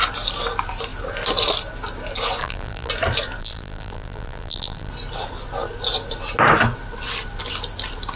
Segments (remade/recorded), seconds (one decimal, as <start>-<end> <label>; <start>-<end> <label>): 0.0-2.4 recorded; 2.4-2.9 remade; 2.9-3.4 recorded; 3.4-4.9 remade; 4.9-8.2 recorded